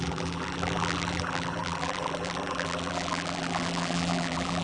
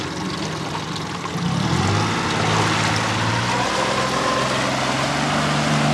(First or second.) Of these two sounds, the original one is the second